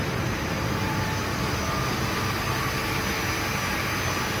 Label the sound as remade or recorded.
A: recorded